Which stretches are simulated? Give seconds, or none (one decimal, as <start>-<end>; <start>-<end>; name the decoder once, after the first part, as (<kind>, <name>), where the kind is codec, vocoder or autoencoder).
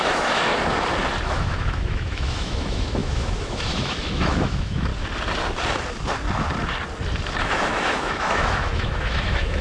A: 0.0-0.5 (autoencoder, DAC-VAE); 1.2-4.9; 7.4-9.6